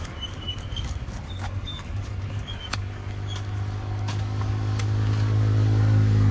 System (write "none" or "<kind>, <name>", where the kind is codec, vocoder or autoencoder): codec, DAC